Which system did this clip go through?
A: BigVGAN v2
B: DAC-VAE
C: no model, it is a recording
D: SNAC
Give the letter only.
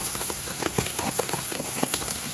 D